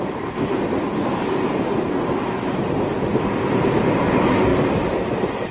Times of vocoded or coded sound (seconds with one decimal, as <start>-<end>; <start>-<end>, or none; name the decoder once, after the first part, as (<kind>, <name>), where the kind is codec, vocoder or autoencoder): 0.9-1.7 (vocoder, BigVGAN v2); 3.1-4.0; 4.5-5.1